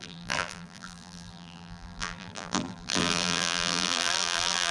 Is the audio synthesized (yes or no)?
yes